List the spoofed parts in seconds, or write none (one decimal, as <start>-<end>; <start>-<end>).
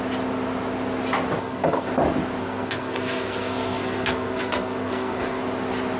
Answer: 1.4-1.9; 2.4-5.4